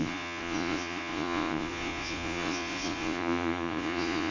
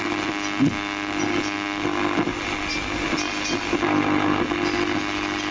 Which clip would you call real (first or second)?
second